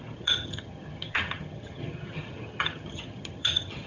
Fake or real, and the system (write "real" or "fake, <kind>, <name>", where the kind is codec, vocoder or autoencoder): fake, vocoder, HiFi-GAN